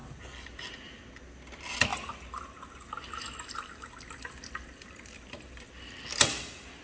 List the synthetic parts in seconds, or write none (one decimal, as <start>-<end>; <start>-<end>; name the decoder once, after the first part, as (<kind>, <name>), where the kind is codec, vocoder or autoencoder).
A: 0.0-1.0 (vocoder, BigVGAN v2); 1.9-5.7

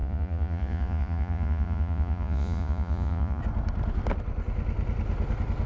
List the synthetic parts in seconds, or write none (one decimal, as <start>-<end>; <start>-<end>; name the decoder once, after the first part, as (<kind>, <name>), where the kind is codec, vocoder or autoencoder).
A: 0.0-3.4 (vocoder, Vocos)